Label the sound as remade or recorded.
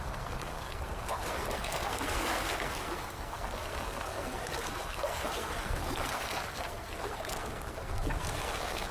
remade